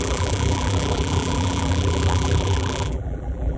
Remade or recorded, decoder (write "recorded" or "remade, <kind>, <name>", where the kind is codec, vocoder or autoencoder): remade, vocoder, BigVGAN v2